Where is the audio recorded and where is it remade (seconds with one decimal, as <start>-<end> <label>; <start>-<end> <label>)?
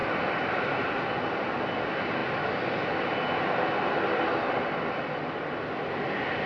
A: 0.0-6.5 recorded